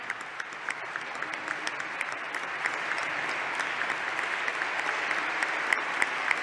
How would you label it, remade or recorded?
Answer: recorded